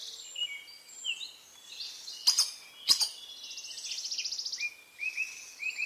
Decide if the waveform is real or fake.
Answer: real